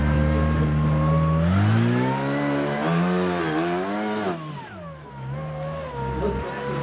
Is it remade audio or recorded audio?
recorded